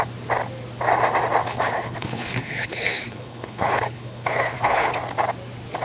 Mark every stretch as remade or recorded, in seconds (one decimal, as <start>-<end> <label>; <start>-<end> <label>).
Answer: 0.0-1.4 recorded; 1.4-4.9 remade; 4.9-5.8 recorded